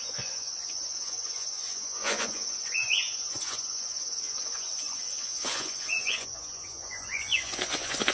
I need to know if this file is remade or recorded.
remade